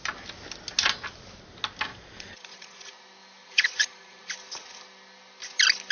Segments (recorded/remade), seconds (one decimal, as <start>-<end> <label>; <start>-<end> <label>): 0.0-1.9 recorded; 1.9-2.9 remade; 2.9-3.4 recorded; 3.4-4.3 remade; 4.3-5.9 recorded